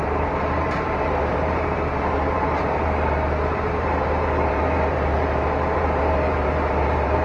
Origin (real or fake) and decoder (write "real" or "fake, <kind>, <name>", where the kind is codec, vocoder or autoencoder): fake, vocoder, BigVGAN v2